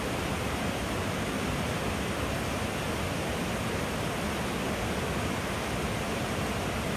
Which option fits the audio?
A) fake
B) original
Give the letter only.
B